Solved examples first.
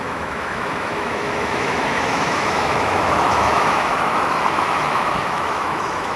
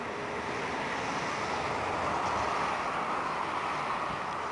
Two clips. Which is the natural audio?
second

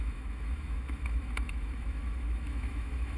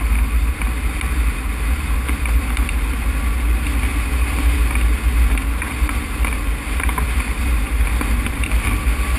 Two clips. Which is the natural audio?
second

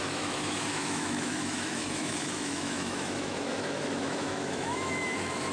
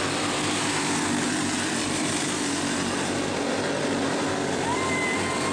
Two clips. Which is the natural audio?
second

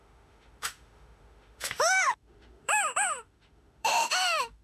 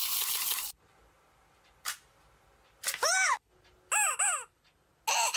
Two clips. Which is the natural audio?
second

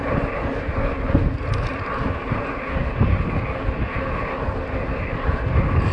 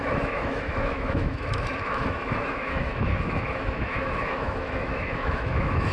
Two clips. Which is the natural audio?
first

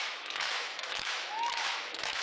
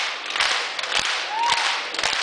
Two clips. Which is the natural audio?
second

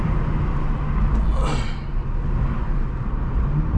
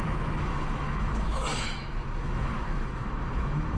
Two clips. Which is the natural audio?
first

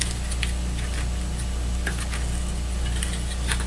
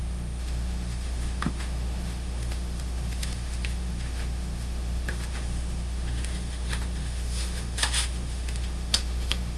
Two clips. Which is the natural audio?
first